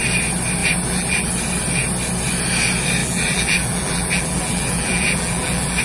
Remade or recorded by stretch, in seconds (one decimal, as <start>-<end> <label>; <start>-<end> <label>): 0.0-0.6 recorded; 0.6-1.3 remade; 1.3-3.0 recorded; 3.0-5.8 remade